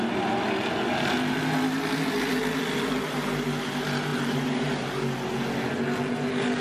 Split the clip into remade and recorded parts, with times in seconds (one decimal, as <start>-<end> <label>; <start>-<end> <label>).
0.0-6.6 recorded